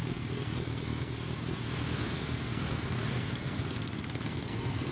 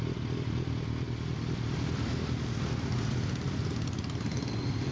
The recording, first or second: second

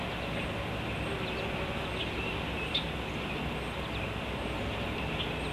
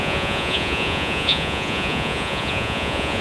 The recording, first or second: first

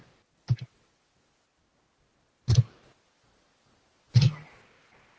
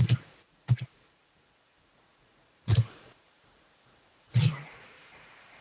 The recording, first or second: first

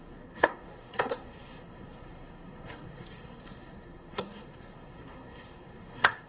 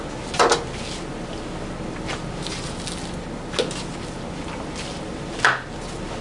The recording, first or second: second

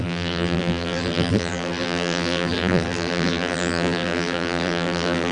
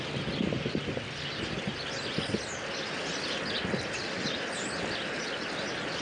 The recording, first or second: second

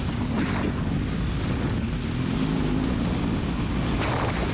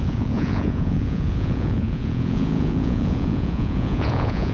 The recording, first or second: first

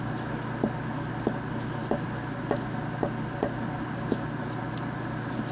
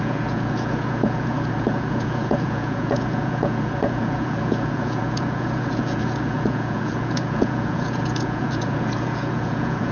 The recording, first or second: first